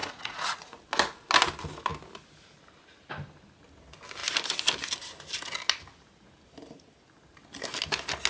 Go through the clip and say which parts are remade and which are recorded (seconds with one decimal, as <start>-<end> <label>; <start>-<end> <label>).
0.0-0.8 remade; 0.8-8.3 recorded